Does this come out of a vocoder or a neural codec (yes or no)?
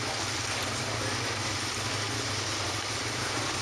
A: no